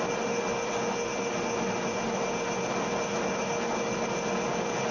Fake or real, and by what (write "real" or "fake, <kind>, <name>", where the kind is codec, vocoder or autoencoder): real